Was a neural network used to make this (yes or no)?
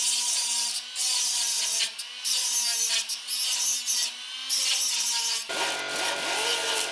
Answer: no